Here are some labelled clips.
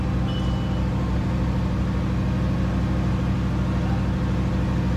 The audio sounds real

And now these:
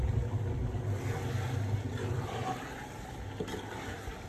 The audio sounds real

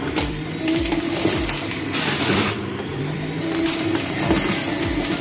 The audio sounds fake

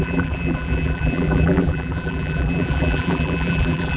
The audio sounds fake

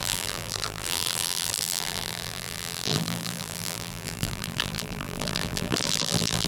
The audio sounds fake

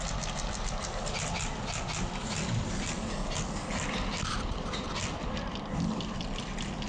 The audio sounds real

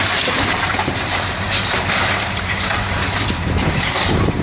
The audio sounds fake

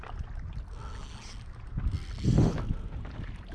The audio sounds real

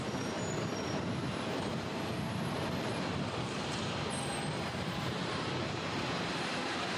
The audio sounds fake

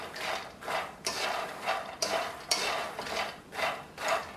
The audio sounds fake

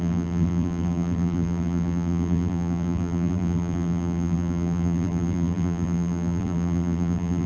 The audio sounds fake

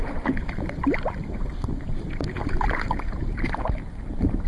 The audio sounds fake